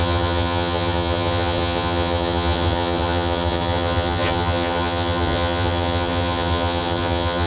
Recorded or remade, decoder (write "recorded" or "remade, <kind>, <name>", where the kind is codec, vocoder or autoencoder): remade, vocoder, HiFi-GAN